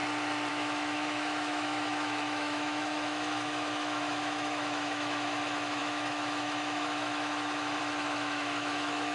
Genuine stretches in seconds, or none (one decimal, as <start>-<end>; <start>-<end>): 0.0-0.5